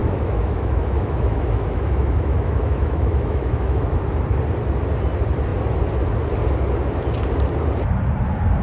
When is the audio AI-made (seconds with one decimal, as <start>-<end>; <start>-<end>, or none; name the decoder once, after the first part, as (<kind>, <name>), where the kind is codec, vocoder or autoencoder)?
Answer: 0.0-4.0 (autoencoder, DAC-VAE)